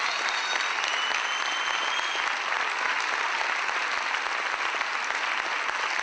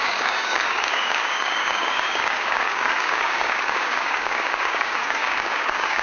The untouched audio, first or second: first